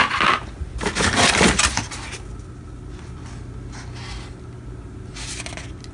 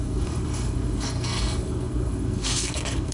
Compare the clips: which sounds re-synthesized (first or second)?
second